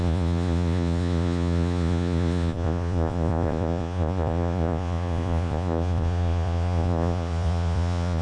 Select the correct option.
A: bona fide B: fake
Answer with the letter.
B